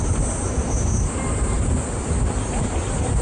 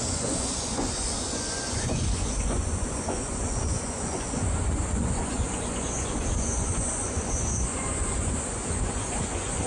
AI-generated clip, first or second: second